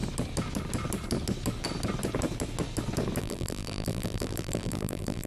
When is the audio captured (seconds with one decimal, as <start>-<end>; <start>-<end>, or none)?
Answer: 0.0-3.2